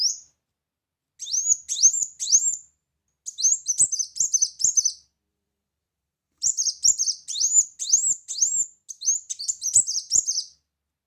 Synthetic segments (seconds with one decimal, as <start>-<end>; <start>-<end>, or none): 5.3-6.7